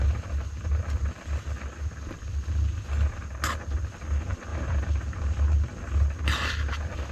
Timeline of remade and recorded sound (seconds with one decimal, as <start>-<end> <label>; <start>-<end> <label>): 0.0-4.5 recorded; 4.5-5.4 remade; 5.4-7.1 recorded